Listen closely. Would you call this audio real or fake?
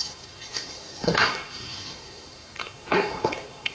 fake